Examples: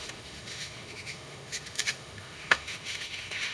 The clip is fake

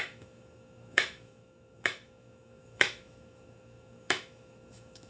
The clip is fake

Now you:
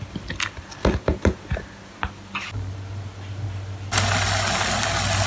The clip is real